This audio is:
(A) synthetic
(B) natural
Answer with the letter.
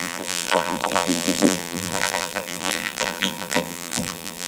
A